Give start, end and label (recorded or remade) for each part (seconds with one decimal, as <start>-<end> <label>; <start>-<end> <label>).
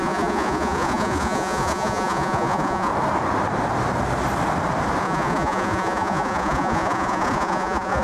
0.0-2.9 remade; 2.9-5.0 recorded; 5.0-8.0 remade